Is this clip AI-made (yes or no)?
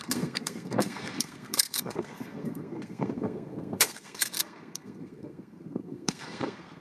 yes